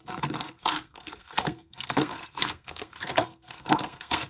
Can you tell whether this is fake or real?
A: fake